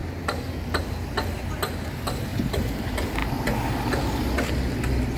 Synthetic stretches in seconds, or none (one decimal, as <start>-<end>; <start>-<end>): 2.3-2.8